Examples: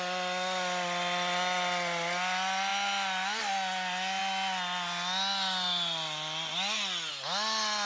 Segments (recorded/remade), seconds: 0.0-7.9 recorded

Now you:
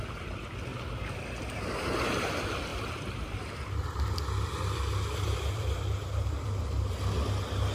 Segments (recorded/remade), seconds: 0.0-2.7 recorded; 2.7-7.3 remade; 7.3-7.7 recorded